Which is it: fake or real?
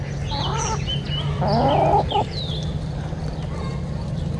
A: real